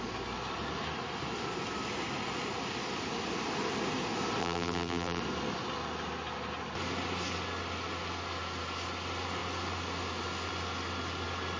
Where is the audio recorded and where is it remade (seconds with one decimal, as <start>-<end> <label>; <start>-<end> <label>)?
0.0-4.4 recorded; 4.4-5.2 remade; 5.2-11.6 recorded